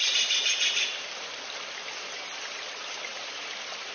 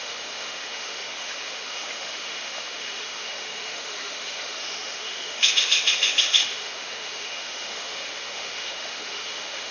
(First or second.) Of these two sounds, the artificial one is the second